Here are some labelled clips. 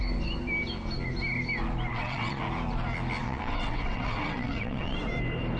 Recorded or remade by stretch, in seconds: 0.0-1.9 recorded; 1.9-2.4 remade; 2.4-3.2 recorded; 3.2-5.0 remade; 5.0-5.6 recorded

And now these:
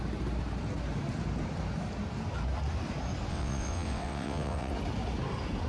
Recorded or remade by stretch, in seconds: 0.0-3.3 recorded; 3.3-4.7 remade; 4.7-5.7 recorded

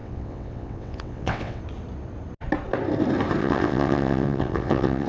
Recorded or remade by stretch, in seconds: 0.0-1.6 remade; 1.6-3.4 recorded; 3.4-5.1 remade

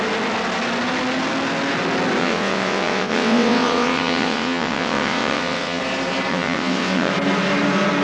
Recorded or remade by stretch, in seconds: 0.0-2.2 recorded; 2.2-5.8 remade; 5.8-6.3 recorded; 6.3-7.1 remade; 7.1-8.0 recorded

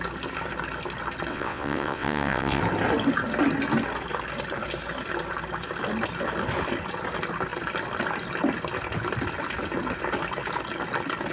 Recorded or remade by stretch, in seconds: 0.0-1.3 recorded; 1.3-2.6 remade; 2.6-11.3 recorded

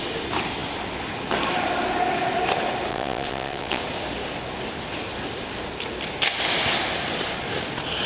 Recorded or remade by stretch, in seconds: 0.0-2.9 recorded; 2.9-3.8 remade; 3.8-8.1 recorded

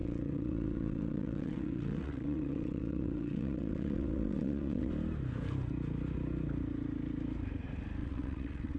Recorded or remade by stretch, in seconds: 0.0-4.9 remade; 4.9-8.0 recorded; 8.0-8.8 remade